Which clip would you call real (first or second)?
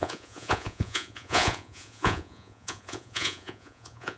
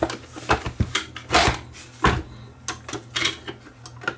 second